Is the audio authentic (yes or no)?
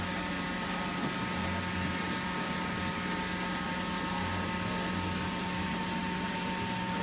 yes